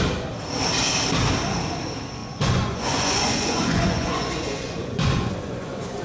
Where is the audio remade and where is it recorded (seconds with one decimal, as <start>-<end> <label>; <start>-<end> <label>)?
0.0-2.2 recorded; 2.2-6.0 remade

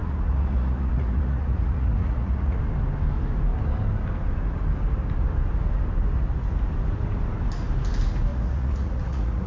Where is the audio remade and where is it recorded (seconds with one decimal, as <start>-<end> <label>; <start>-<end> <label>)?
0.0-2.6 remade; 2.6-8.3 recorded; 8.3-9.5 remade

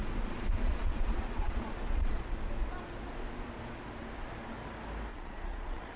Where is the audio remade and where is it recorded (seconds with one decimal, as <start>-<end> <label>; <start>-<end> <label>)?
0.0-2.2 remade; 2.2-5.1 recorded; 5.1-6.0 remade

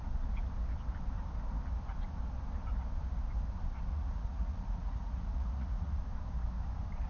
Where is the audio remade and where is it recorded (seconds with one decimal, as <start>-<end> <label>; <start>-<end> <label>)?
0.0-3.9 recorded; 3.9-6.0 remade; 6.0-7.1 recorded

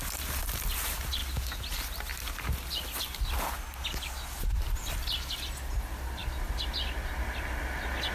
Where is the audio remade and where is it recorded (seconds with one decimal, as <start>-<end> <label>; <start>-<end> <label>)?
0.0-8.1 recorded